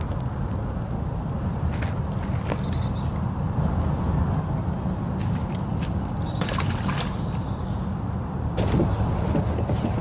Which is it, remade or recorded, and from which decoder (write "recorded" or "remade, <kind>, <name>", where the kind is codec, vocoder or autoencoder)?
recorded